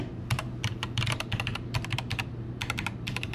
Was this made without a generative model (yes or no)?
no